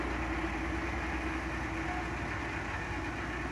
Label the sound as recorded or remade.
recorded